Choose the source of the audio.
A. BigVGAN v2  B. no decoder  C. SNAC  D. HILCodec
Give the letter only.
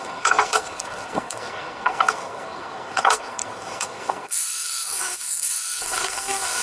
C